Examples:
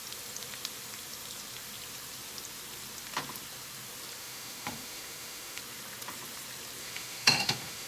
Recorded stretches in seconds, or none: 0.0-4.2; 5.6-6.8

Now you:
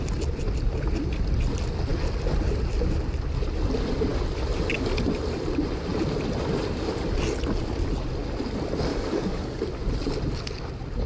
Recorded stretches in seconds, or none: 0.0-8.9; 9.6-11.1

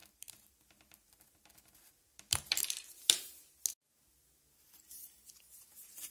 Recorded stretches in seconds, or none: 0.5-2.1; 3.3-6.1

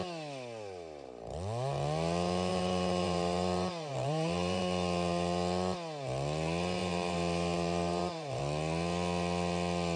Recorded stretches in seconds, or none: 0.0-2.5; 4.6-6.8; 8.4-10.0

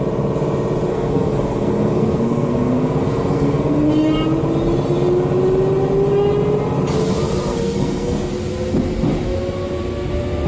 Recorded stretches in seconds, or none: 0.0-0.9; 3.9-7.5; 8.3-10.5